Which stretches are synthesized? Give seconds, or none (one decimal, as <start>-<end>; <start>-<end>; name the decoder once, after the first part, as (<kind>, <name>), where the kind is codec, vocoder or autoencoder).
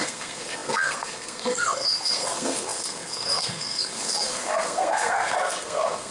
0.0-6.1 (codec, SNAC)